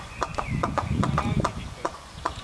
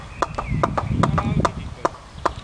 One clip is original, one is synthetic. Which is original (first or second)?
second